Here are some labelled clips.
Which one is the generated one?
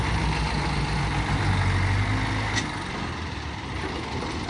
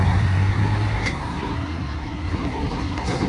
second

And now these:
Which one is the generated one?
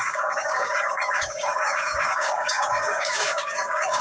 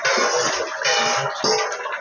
first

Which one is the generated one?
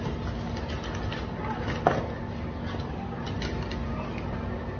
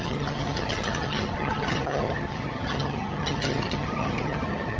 second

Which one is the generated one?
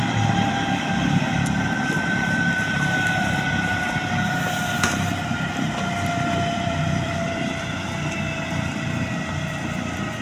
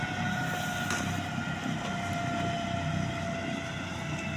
first